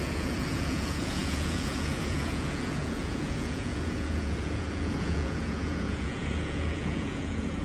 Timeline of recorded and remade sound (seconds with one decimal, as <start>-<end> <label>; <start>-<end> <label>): 0.0-7.6 remade